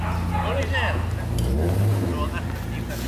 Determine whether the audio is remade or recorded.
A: recorded